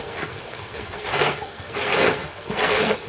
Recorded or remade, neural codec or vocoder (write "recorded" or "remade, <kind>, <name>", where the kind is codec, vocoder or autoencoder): remade, codec, SNAC